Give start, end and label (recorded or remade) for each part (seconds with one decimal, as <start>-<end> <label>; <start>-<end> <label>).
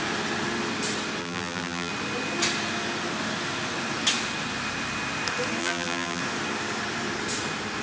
0.0-1.2 recorded; 1.2-1.9 remade; 1.9-5.6 recorded; 5.6-6.2 remade; 6.2-7.8 recorded